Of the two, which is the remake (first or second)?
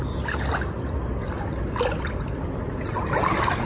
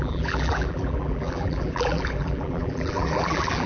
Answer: second